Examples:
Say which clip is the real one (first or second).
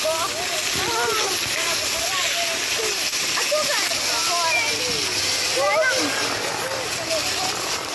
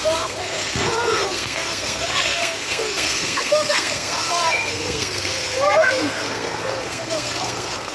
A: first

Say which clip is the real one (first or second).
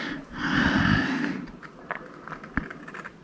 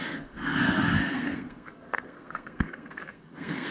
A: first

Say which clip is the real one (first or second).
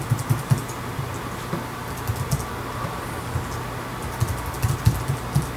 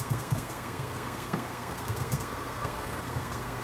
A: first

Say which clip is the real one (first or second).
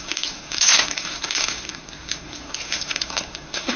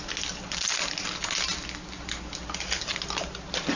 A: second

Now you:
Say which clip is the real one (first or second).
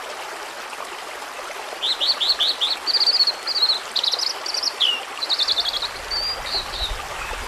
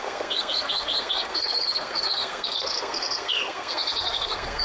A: first